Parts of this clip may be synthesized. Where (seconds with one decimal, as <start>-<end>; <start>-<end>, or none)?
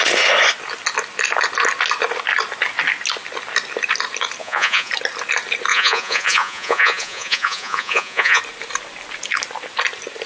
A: 4.4-4.9; 5.7-8.4